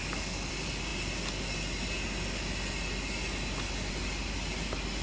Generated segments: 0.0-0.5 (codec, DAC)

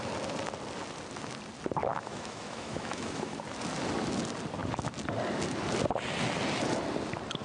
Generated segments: 1.8-3.4 (autoencoder, DAC-VAE)

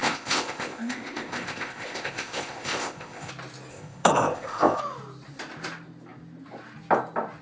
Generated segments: 0.0-3.3 (codec, ZipCodec); 3.7-4.8

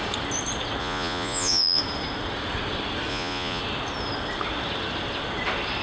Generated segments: 0.8-1.8 (vocoder, Vocos); 3.1-3.6

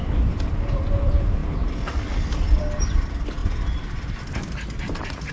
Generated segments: none

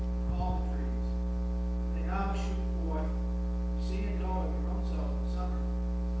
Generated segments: none

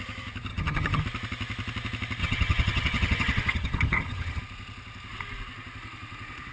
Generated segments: 0.5-1.0 (vocoder, HiFi-GAN); 2.2-4.4